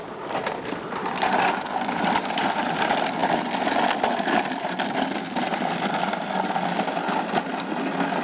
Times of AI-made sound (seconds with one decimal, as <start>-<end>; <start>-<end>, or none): none

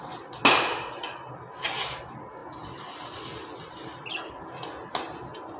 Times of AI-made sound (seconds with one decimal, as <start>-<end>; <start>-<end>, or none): none

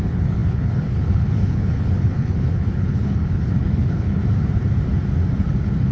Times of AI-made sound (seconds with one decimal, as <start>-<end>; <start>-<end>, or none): 0.0-4.2; 5.4-5.9

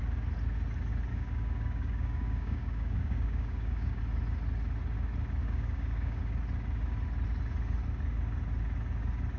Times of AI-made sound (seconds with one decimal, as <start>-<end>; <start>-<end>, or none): 1.1-4.0; 5.4-6.2

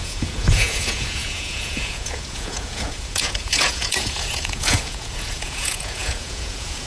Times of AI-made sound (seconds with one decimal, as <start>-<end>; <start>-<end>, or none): 0.0-6.9

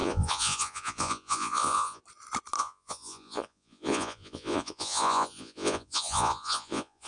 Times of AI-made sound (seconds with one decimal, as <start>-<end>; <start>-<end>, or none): 0.0-2.0; 2.6-7.1

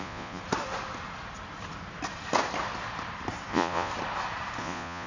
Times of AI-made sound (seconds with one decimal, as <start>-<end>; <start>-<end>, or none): 0.0-0.4; 3.5-3.9; 4.6-5.1

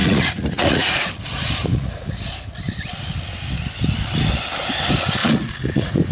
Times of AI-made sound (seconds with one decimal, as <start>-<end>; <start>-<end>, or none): 0.0-1.1; 1.6-2.2; 5.2-6.1